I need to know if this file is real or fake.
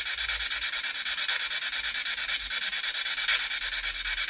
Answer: real